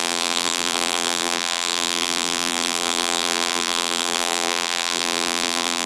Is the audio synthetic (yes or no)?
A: yes